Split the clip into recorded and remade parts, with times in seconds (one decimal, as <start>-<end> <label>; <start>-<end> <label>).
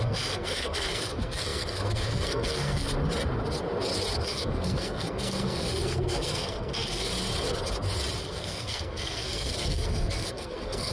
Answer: 0.0-2.9 remade; 2.9-4.2 recorded; 4.2-7.1 remade; 7.1-8.2 recorded; 8.2-10.9 remade